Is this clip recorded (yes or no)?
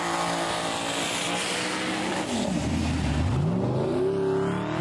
yes